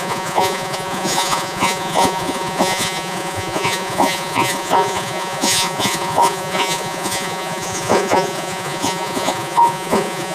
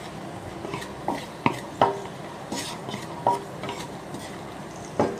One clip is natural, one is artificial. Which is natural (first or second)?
second